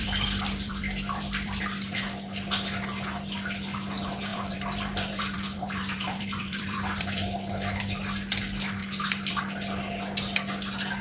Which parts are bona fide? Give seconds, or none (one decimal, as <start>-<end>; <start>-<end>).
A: 1.6-4.3; 7.5-8.8; 9.4-11.0